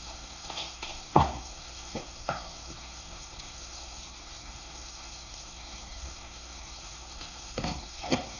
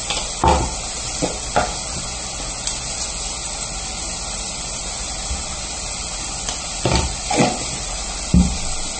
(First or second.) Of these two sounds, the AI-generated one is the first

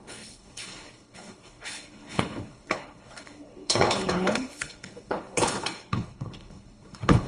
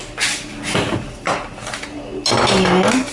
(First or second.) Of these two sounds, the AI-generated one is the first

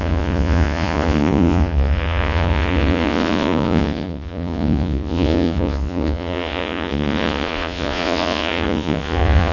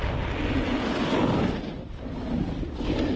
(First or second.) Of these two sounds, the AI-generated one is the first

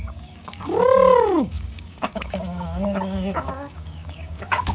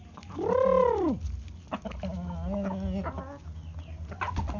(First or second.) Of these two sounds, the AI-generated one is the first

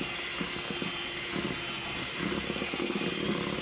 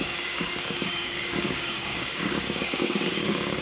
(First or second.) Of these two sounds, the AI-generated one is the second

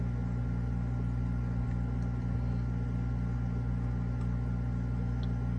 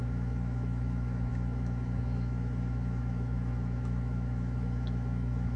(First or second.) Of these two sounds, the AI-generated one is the second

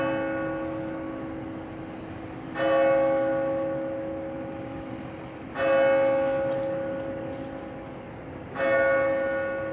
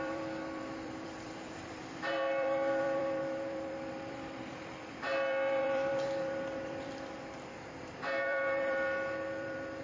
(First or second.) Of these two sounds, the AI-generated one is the second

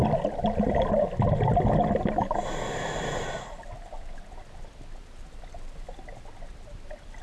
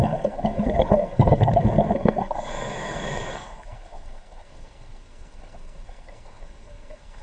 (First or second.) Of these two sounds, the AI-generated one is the second